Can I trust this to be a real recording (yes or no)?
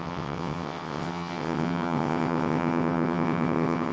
no